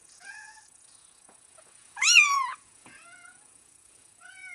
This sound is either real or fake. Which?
fake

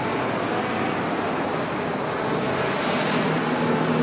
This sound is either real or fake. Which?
real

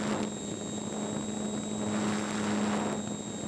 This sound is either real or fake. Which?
real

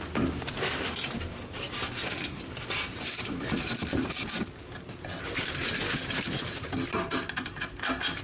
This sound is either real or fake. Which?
real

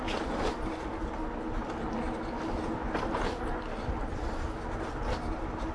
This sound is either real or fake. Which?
real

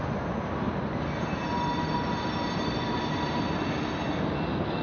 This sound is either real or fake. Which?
real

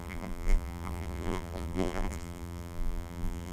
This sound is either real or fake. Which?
fake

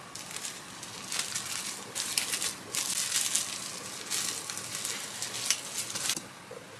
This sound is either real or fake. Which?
real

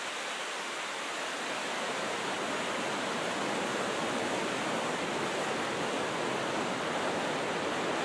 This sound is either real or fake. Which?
real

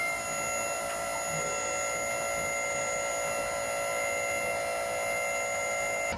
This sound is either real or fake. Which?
real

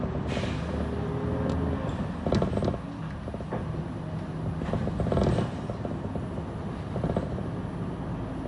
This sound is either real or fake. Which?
real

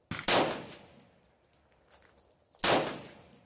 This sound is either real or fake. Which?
real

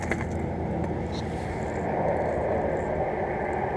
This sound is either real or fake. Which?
real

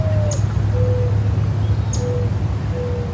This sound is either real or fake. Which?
real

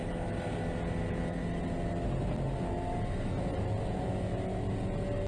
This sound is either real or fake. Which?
real